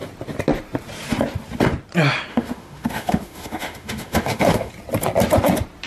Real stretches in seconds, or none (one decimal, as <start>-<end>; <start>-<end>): 0.0-2.3; 4.7-5.9

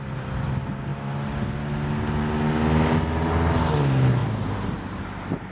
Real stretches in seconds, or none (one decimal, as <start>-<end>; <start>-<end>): 0.0-5.5